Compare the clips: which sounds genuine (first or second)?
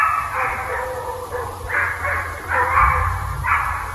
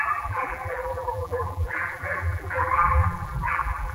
first